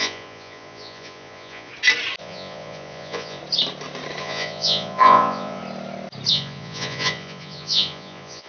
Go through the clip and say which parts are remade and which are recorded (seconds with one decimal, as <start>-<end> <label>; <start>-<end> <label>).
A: 0.0-1.7 remade; 1.7-2.2 recorded; 2.2-3.4 remade; 3.4-4.2 recorded; 4.2-5.6 remade; 5.6-6.3 recorded; 6.3-8.5 remade